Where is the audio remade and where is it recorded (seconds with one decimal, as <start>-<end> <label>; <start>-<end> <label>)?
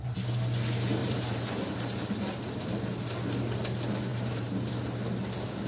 0.0-1.0 recorded; 1.0-1.7 remade; 1.7-4.1 recorded; 4.1-4.7 remade; 4.7-5.7 recorded